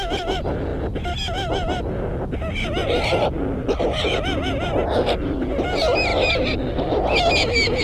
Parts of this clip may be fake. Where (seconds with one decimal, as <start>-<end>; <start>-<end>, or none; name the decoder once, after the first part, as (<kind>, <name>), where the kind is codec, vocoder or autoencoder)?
none